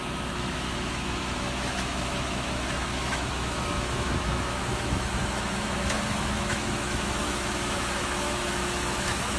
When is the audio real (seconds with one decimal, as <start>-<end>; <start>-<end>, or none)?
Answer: none